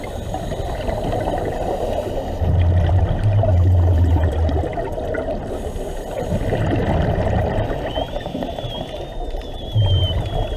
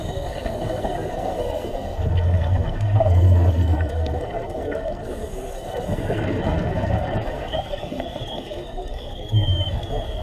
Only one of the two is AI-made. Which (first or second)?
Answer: second